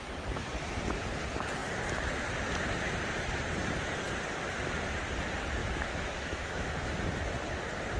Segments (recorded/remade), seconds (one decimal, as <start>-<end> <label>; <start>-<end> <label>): 0.0-5.6 recorded; 5.6-6.7 remade; 6.7-8.0 recorded